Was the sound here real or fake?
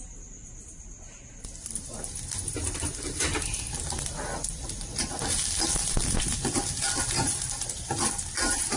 real